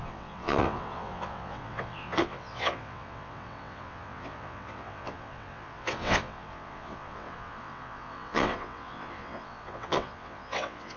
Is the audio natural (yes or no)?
no